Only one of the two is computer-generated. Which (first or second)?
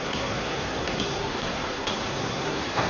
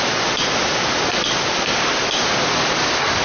first